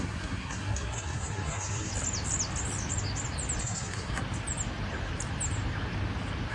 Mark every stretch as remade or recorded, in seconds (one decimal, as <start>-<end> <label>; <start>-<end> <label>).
0.0-1.9 remade; 1.9-3.6 recorded; 3.6-4.2 remade; 4.2-6.5 recorded